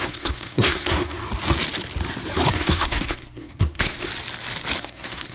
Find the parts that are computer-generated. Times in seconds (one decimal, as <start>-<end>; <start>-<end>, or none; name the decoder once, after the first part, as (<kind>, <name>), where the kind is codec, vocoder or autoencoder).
0.0-1.2 (codec, SNAC); 2.5-4.1; 4.8-5.3